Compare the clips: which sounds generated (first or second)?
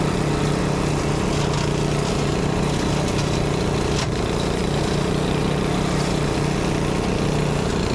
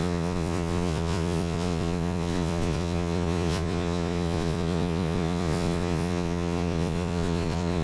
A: second